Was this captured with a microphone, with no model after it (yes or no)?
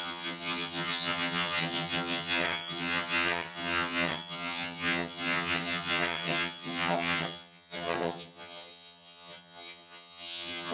no